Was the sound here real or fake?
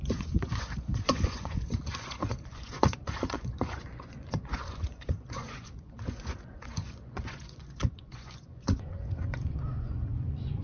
fake